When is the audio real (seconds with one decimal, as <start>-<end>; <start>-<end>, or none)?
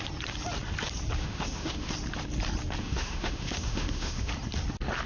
0.0-1.2; 1.9-2.8; 4.3-5.1